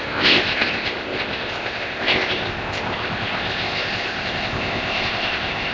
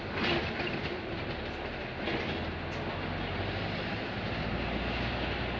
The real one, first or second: second